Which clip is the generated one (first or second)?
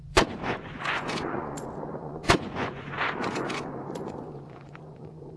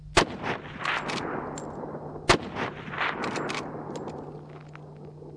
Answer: first